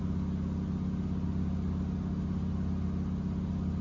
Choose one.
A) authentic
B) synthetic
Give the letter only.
A